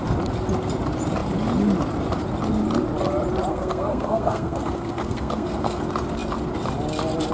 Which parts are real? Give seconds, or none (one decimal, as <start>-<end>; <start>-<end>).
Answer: 0.0-3.5; 5.8-7.3